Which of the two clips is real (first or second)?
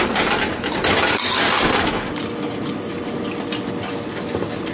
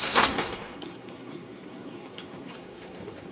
first